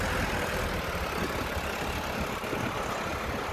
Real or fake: real